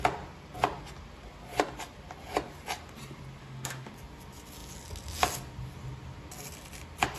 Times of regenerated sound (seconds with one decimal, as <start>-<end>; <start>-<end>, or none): 3.4-3.9

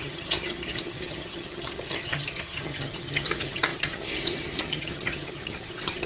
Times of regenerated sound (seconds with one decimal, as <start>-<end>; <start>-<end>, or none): 0.0-6.1

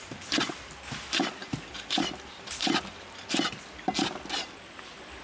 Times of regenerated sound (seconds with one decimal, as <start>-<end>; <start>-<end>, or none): none

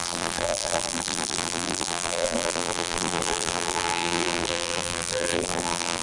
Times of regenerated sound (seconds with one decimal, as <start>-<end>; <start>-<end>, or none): 0.0-6.0